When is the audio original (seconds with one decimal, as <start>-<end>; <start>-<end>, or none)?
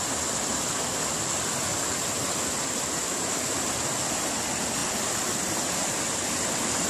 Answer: 0.0-1.7; 3.7-4.8